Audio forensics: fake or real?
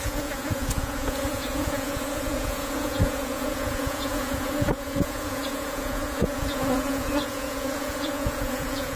fake